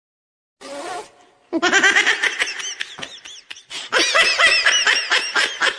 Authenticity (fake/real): real